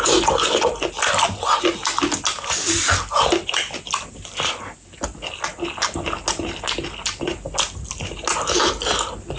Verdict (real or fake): real